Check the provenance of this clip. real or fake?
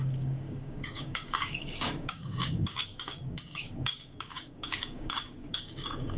fake